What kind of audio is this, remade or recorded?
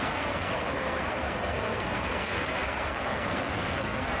remade